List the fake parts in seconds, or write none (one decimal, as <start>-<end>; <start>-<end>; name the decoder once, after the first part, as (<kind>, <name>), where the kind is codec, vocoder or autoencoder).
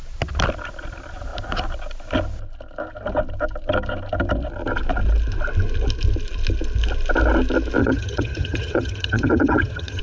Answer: 7.8-10.0 (vocoder, HiFi-GAN)